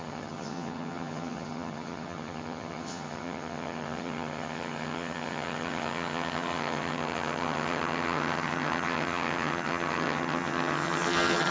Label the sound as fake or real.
fake